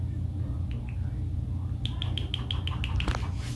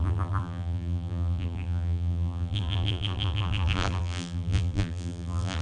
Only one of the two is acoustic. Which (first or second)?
first